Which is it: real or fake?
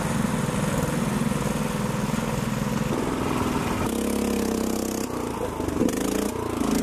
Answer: real